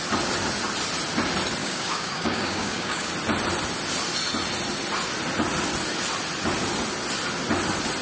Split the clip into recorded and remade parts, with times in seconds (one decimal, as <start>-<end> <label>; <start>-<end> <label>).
0.0-1.6 recorded; 1.6-3.1 remade; 3.1-8.0 recorded